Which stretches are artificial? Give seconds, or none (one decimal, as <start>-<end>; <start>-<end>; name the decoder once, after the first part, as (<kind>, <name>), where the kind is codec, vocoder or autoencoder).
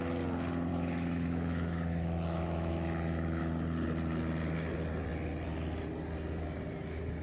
0.7-3.4 (autoencoder, DAC-VAE)